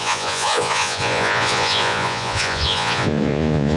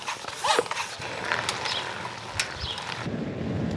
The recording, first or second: second